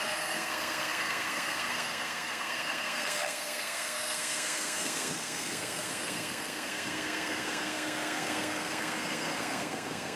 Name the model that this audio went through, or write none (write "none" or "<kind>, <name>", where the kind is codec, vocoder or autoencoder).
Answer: codec, SNAC